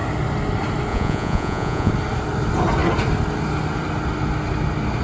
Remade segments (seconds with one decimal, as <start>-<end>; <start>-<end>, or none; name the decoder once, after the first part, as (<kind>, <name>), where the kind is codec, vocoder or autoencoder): 0.9-1.9 (vocoder, Vocos)